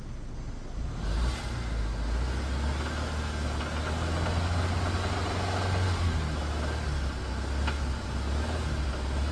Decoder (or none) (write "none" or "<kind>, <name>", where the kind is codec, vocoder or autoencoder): none